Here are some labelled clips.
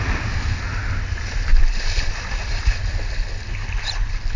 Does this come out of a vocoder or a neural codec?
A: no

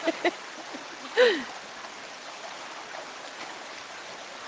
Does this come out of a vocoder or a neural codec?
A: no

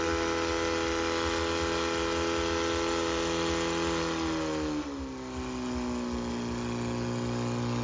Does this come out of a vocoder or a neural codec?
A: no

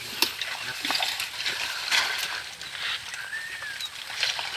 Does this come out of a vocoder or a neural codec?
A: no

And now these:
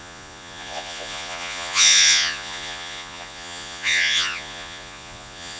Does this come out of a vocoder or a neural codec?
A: yes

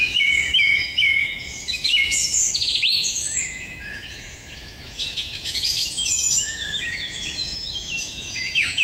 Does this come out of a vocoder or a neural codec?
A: yes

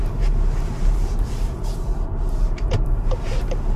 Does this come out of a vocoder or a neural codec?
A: yes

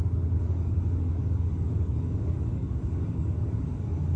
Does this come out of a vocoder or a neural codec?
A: yes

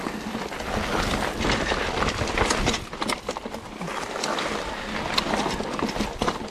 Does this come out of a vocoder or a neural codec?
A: no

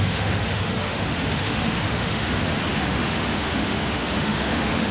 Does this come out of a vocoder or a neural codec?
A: yes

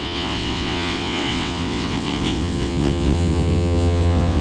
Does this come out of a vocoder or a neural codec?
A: yes